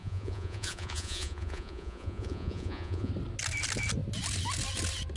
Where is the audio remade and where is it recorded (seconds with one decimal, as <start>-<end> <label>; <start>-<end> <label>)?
0.0-3.1 remade; 3.1-5.2 recorded